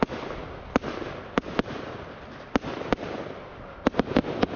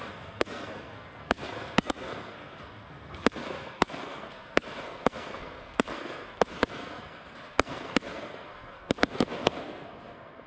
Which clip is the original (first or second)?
first